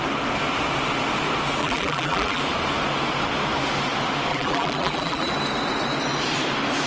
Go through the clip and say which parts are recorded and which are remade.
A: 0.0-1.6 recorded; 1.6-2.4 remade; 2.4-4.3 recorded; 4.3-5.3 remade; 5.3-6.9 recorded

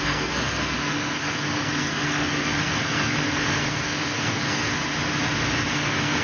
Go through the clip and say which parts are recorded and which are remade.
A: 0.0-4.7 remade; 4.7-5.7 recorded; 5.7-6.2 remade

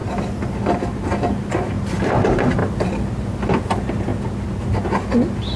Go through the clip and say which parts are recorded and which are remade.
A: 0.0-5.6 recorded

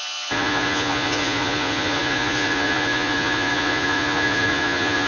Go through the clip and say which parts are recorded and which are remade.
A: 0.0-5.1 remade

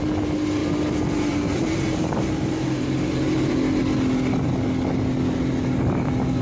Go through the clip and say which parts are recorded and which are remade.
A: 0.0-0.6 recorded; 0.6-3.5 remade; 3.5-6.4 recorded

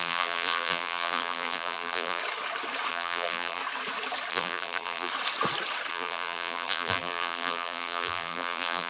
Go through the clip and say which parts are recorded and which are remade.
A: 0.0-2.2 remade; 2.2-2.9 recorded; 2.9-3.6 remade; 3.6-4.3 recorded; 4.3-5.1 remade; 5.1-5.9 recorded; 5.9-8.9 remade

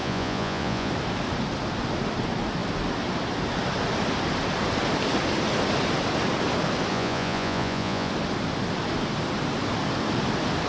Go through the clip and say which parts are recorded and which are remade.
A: 0.0-0.9 remade; 0.9-6.9 recorded; 6.9-8.1 remade; 8.1-10.7 recorded

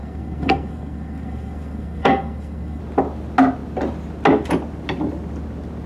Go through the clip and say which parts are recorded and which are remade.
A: 0.0-2.8 remade; 2.8-5.9 recorded